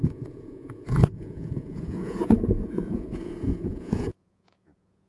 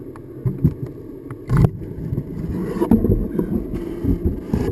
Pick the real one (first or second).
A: second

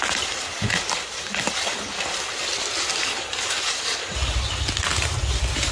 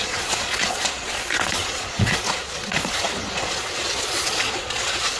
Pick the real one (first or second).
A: first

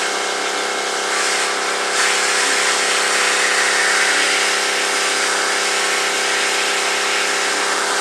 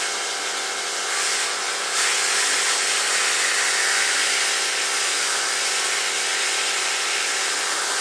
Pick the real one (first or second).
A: first